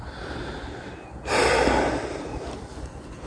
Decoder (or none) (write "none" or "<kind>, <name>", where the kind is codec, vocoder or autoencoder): none